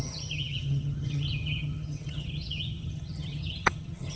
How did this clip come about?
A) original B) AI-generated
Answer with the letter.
B